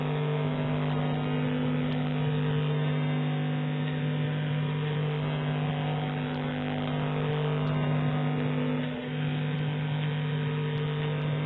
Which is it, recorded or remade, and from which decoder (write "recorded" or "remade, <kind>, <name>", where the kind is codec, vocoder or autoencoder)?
remade, autoencoder, DAC-VAE